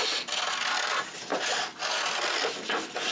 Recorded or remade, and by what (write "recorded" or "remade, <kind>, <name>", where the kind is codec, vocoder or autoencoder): recorded